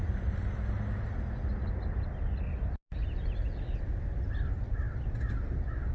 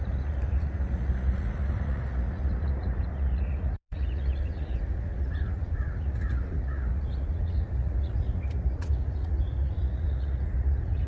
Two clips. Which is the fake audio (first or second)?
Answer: second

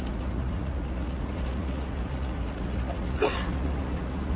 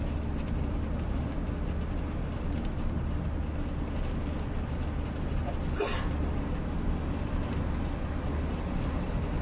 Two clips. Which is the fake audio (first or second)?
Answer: first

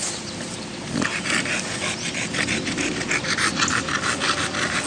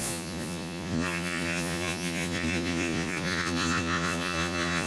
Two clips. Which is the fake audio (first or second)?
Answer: second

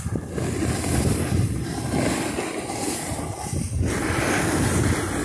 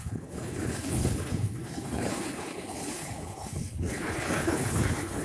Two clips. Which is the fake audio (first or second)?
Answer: second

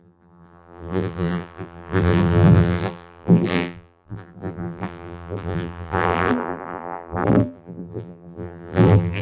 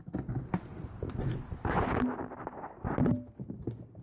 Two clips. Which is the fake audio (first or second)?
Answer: first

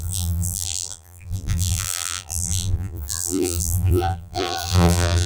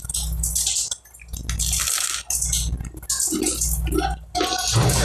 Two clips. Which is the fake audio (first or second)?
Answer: first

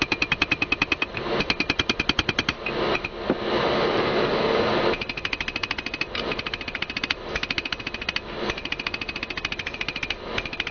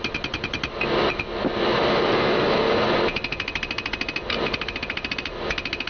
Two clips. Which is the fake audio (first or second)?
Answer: first